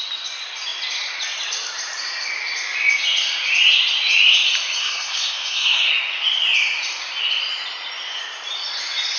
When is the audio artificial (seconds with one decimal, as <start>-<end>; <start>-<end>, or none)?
4.8-5.9